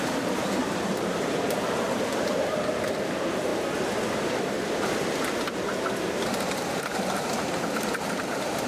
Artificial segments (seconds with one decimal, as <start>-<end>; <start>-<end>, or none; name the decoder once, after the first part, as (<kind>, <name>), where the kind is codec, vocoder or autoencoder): 0.0-3.5 (vocoder, BigVGAN v2); 6.8-8.7